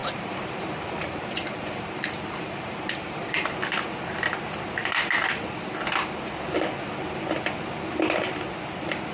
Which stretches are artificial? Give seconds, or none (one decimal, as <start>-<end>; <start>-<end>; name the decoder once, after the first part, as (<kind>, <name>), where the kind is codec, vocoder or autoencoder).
0.0-3.5 (vocoder, BigVGAN v2)